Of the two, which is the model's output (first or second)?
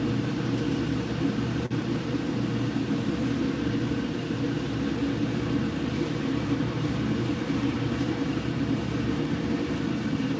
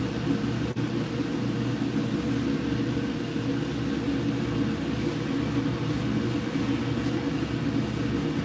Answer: first